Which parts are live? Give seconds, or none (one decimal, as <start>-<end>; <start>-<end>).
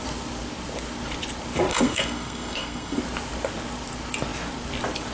0.0-1.7; 3.0-5.1